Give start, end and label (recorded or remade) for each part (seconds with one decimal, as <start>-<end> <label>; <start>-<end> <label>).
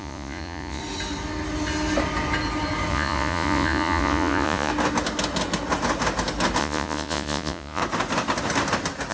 0.0-0.8 remade; 0.8-2.9 recorded; 2.9-4.7 remade; 4.7-6.6 recorded; 6.6-7.8 remade; 7.8-9.1 recorded